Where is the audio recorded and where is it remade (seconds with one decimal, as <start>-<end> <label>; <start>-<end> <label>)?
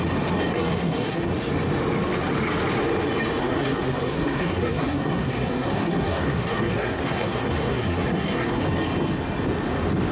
0.0-0.5 recorded; 0.5-1.3 remade; 1.3-3.4 recorded; 3.4-8.6 remade; 8.6-10.1 recorded